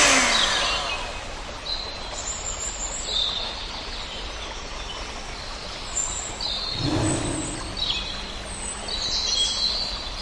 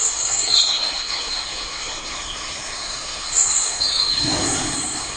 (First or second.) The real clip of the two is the first